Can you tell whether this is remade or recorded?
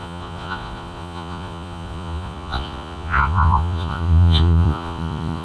remade